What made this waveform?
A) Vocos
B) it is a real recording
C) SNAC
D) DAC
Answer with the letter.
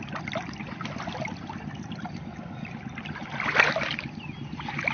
B